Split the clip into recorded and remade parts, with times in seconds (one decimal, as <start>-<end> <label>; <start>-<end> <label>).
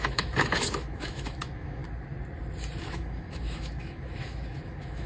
0.0-1.8 remade; 1.8-2.8 recorded; 2.8-5.1 remade